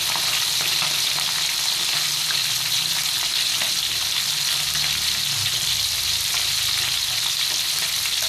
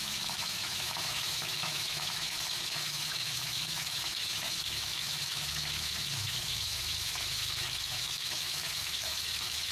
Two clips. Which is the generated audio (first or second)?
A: second